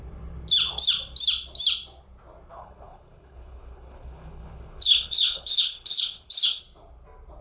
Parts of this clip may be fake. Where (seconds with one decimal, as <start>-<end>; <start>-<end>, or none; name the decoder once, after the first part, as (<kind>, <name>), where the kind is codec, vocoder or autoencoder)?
2.5-6.6 (codec, HILCodec)